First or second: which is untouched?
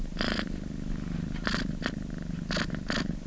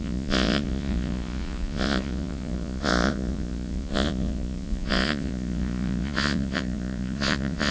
first